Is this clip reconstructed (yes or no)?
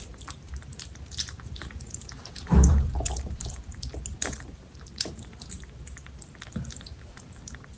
yes